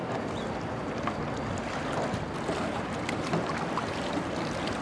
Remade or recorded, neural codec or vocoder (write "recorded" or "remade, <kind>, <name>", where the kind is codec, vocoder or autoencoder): recorded